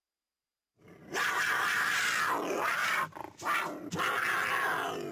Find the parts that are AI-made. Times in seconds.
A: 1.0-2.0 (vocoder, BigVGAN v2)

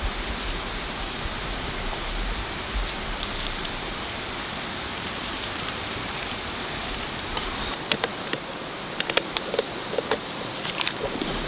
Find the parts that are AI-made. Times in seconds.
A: 0.0-11.5 (vocoder, BigVGAN v2)

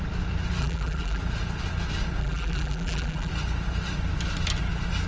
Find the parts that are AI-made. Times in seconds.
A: 0.6-1.2 (vocoder, BigVGAN v2); 2.2-3.3

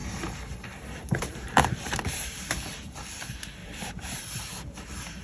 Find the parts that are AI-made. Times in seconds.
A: 0.0-2.4 (vocoder, BigVGAN v2); 3.6-4.2

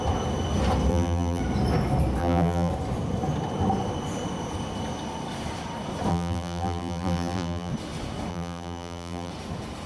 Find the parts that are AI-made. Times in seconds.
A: 0.9-1.4 (vocoder, BigVGAN v2); 2.2-2.7; 6.1-7.7; 8.3-9.3

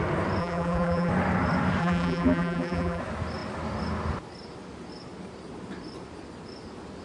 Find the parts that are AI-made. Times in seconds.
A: 0.4-1.1 (vocoder, BigVGAN v2); 1.8-3.0

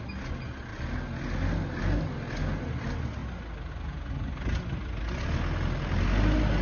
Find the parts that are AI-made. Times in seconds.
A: none